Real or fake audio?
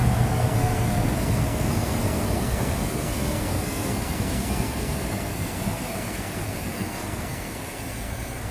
fake